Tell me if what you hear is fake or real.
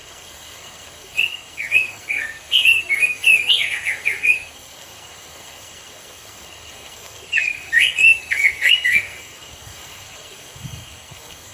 fake